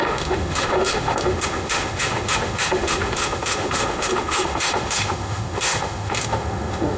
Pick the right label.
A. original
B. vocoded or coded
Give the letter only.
B